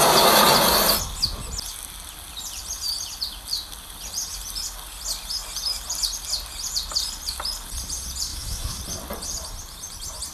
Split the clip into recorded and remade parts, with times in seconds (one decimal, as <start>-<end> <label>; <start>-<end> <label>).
0.0-8.3 recorded; 8.3-8.8 remade; 8.8-10.3 recorded